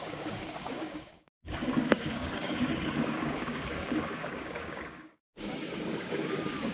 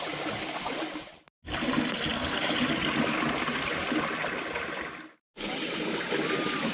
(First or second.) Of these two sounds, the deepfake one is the first